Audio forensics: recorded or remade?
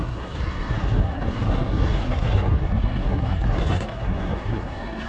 remade